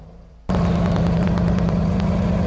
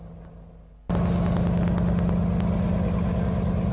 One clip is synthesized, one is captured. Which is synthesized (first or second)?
first